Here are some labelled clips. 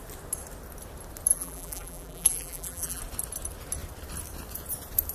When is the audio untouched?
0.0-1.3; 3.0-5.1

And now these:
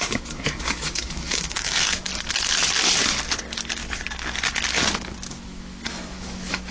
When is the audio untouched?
2.1-5.3

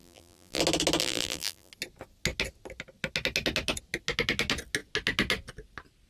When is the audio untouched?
0.6-1.0; 1.7-6.1

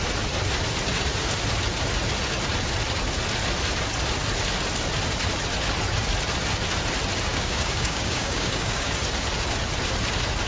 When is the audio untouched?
0.0-7.3; 8.9-10.5

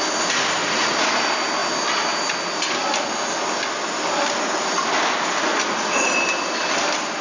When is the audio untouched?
0.0-0.6; 1.2-5.5; 6.1-7.2

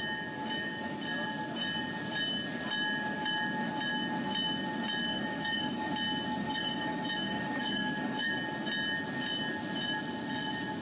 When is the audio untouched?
0.0-5.1; 5.9-6.4; 8.3-10.8

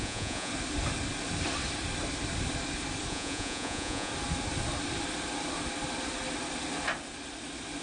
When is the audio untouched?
0.5-3.1; 4.1-7.8

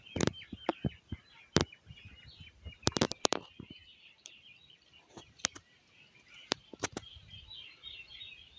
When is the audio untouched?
0.0-8.6